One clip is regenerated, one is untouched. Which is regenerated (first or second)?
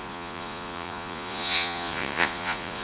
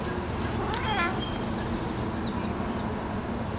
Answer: first